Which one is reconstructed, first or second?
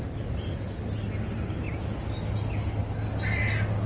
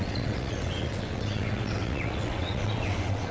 second